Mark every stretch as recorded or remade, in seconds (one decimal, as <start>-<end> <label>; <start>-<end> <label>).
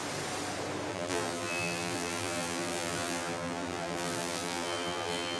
0.0-0.9 recorded; 0.9-5.4 remade